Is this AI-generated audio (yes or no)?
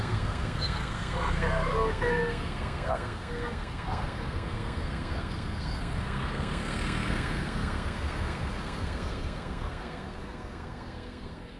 yes